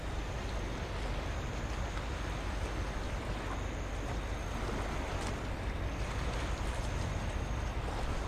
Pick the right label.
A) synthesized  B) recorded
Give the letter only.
B